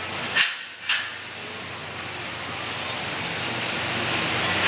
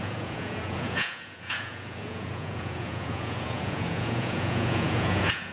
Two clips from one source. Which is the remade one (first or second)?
second